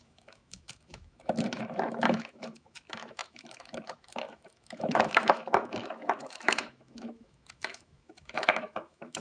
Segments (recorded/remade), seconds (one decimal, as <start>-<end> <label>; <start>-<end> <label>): 0.0-9.2 remade